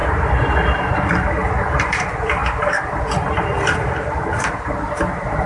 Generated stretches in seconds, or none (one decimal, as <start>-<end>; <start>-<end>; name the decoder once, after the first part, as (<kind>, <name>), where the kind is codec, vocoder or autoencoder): none

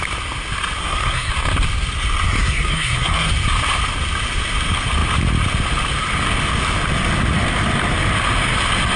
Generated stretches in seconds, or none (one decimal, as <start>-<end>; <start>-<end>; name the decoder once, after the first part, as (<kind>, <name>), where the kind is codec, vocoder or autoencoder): 0.8-1.3 (codec, SNAC); 2.4-3.3

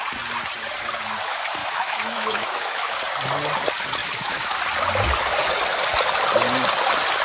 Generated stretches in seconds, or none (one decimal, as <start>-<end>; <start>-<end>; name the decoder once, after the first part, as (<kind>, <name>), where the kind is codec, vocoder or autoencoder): 1.6-3.0 (autoencoder, DAC-VAE); 4.0-4.6